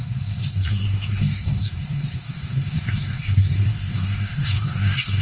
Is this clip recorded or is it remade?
remade